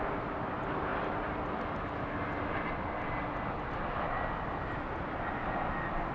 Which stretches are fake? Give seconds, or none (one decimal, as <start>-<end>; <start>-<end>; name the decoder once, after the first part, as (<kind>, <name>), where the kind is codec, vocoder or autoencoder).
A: none